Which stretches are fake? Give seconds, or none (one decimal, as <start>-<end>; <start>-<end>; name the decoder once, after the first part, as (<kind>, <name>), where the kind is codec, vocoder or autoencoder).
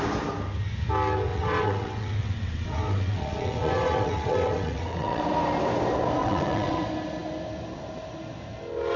1.3-5.2 (vocoder, WaveNeXt); 6.2-6.8